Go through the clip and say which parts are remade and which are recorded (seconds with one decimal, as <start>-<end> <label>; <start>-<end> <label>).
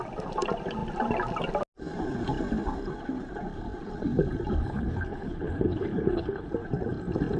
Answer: 0.0-4.6 recorded; 4.6-6.5 remade; 6.5-7.4 recorded